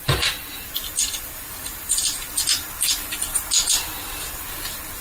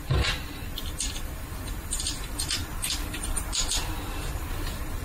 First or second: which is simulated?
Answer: second